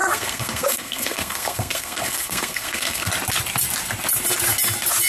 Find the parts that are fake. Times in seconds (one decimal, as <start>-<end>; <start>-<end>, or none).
0.0-3.1